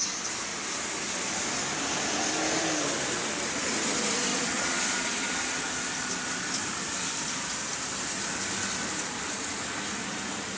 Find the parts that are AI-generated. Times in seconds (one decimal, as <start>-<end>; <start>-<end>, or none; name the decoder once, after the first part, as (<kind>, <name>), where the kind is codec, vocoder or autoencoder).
4.3-5.4 (vocoder, Vocos)